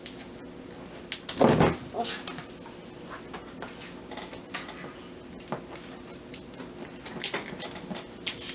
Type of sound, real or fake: real